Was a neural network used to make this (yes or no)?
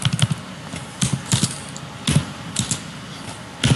no